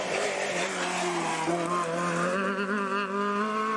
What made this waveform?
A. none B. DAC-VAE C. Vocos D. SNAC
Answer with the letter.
A